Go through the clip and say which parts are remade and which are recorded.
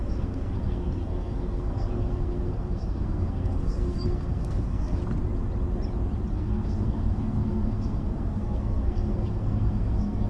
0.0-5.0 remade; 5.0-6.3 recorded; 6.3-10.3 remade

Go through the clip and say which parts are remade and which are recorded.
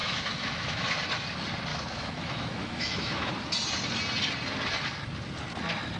0.0-0.9 remade; 0.9-1.7 recorded; 1.7-3.3 remade; 3.3-6.0 recorded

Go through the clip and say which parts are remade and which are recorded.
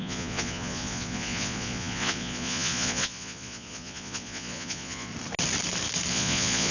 0.0-5.1 remade; 5.1-6.1 recorded; 6.1-6.7 remade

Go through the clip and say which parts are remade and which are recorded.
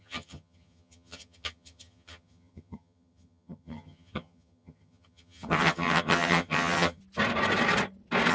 0.0-7.0 remade; 7.0-8.3 recorded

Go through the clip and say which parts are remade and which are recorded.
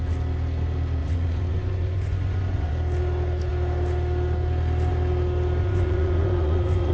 0.0-1.0 recorded; 1.0-2.7 remade; 2.7-5.6 recorded; 5.6-6.9 remade